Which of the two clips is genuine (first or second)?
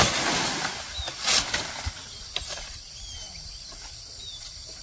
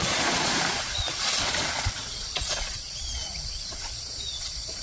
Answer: first